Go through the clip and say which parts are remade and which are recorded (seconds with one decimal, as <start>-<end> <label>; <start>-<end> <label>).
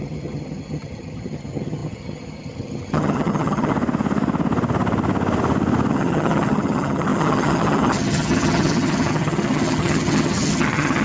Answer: 0.0-3.7 remade; 3.7-5.9 recorded; 5.9-11.0 remade